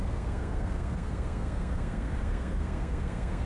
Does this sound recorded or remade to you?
remade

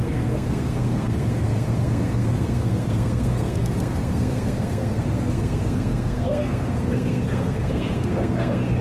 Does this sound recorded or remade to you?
remade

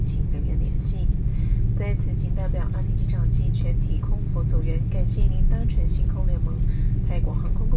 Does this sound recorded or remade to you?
recorded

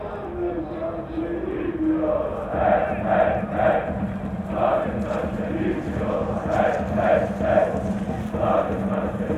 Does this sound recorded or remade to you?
recorded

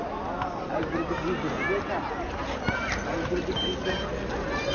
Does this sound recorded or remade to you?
recorded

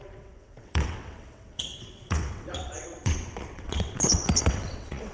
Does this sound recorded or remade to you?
remade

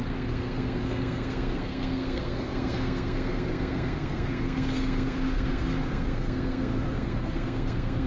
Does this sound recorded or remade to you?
remade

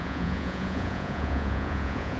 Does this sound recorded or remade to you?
remade